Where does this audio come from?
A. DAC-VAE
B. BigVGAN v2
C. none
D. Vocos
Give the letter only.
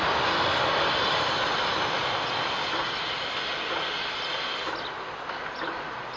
C